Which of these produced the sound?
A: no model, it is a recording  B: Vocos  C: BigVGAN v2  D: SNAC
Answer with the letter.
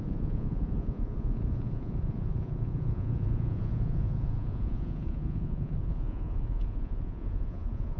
B